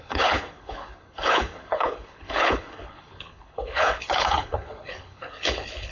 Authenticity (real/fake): fake